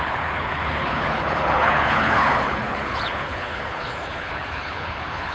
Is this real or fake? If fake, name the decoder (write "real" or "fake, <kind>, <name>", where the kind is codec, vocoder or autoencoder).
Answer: fake, codec, HILCodec